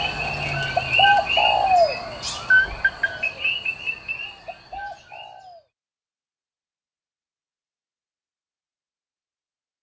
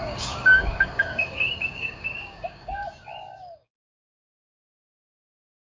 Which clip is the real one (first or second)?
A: first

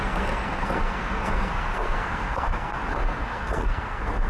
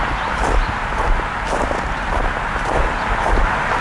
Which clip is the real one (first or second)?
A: second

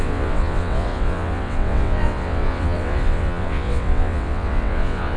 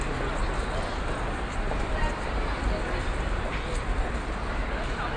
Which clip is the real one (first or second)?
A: second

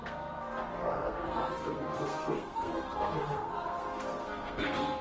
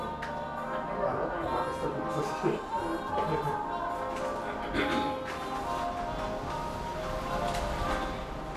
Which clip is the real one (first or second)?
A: second